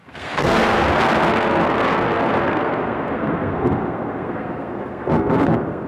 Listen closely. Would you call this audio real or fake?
fake